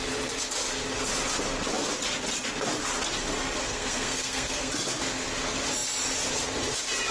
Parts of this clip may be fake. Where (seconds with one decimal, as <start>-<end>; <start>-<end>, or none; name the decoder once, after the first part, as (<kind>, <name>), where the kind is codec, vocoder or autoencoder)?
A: 3.6-4.7 (codec, SNAC)